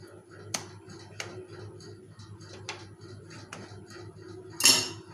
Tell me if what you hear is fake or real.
real